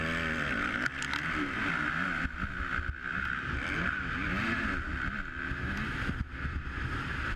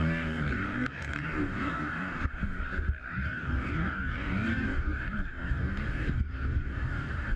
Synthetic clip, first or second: second